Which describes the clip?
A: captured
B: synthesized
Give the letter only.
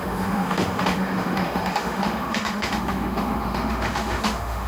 B